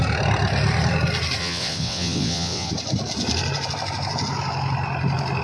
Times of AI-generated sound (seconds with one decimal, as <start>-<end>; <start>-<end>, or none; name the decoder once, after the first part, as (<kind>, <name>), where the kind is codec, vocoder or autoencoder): 1.4-2.7 (vocoder, WaveNeXt)